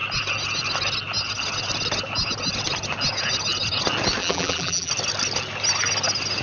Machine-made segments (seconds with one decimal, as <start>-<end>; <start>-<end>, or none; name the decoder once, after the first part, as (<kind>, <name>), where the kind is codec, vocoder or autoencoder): 4.2-4.9 (vocoder, BigVGAN v2)